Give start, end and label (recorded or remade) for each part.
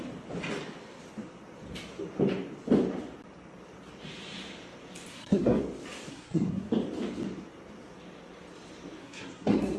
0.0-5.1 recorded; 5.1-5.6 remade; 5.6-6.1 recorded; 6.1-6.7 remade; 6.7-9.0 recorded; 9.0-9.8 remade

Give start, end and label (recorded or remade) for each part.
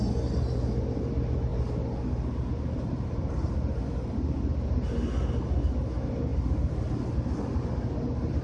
0.0-8.4 recorded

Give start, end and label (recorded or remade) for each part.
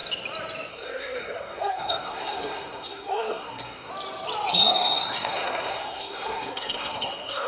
0.0-0.7 recorded; 0.7-3.9 remade; 3.9-4.5 recorded; 4.5-7.5 remade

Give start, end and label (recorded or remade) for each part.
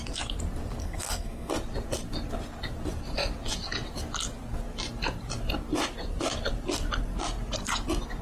0.0-0.8 recorded; 0.8-1.5 remade; 1.5-8.2 recorded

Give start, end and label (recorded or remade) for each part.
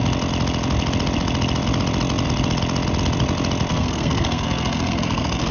0.0-3.7 recorded; 3.7-5.5 remade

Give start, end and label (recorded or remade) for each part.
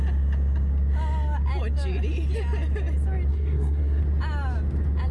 0.0-3.3 recorded; 3.3-4.0 remade; 4.0-5.1 recorded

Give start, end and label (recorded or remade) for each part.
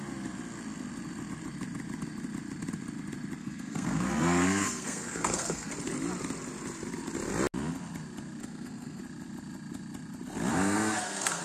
0.0-3.4 recorded; 3.4-5.7 remade; 5.7-8.4 recorded; 8.4-9.0 remade; 9.0-10.5 recorded; 10.5-11.4 remade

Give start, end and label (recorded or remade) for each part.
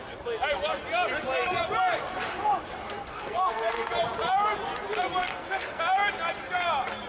0.0-3.0 recorded; 3.0-3.9 remade; 3.9-5.2 recorded; 5.2-5.8 remade; 5.8-7.1 recorded